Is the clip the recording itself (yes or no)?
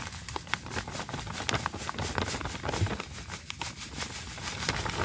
yes